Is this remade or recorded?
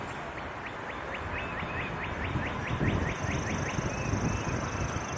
recorded